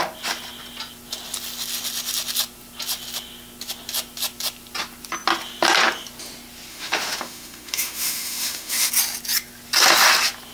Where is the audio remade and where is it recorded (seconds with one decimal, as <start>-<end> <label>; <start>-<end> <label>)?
0.0-6.7 recorded; 6.7-8.9 remade; 8.9-10.5 recorded